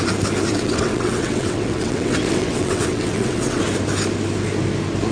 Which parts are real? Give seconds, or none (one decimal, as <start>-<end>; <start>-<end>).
0.0-0.5; 3.6-5.1